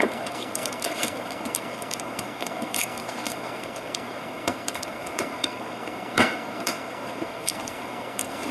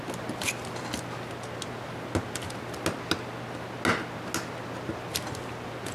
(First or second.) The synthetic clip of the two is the first